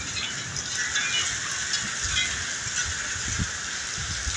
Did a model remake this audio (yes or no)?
no